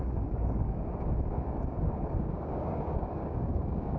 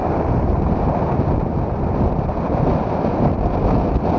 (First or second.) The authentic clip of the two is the second